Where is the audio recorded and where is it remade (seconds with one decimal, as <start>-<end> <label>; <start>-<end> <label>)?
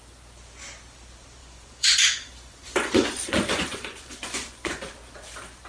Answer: 0.0-1.4 recorded; 1.4-4.8 remade; 4.8-5.7 recorded